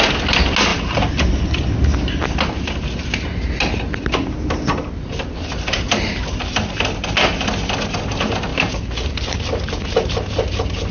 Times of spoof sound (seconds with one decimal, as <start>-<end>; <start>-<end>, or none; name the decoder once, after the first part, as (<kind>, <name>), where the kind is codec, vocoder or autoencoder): 0.7-1.3 (vocoder, BigVGAN v2); 8.5-9.7